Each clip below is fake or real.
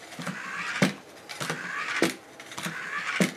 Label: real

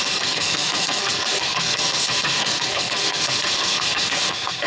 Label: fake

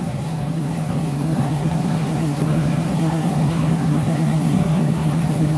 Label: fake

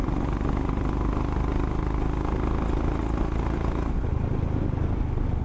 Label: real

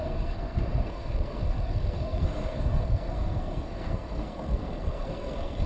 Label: fake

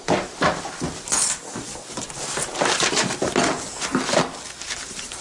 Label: real